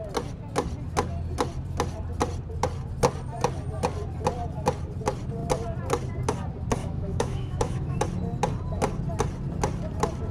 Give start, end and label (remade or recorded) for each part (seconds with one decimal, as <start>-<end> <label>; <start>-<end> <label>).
0.0-6.8 recorded; 6.8-8.0 remade; 8.0-10.3 recorded